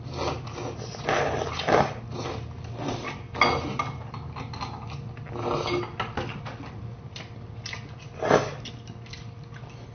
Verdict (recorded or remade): recorded